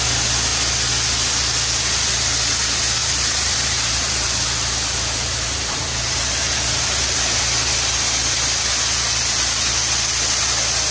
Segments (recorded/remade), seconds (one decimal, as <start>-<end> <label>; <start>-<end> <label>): 0.0-3.0 recorded; 3.0-7.4 remade; 7.4-10.9 recorded